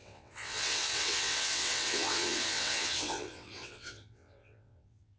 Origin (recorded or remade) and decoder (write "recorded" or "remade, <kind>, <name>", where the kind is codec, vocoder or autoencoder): remade, vocoder, WaveNeXt